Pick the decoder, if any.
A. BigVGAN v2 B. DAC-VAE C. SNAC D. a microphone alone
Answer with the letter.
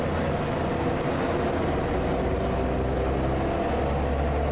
D